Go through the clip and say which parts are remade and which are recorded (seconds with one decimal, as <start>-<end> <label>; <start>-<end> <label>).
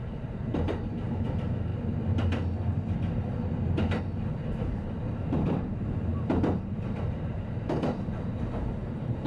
0.0-1.7 remade; 1.7-4.0 recorded; 4.0-6.1 remade; 6.1-7.1 recorded; 7.1-9.3 remade